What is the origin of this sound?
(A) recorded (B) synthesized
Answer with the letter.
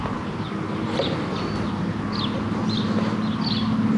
A